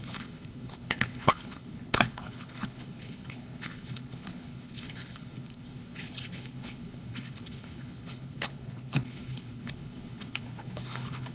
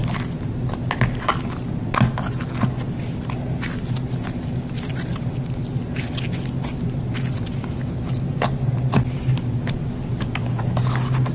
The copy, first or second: first